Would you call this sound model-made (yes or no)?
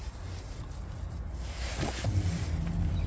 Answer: no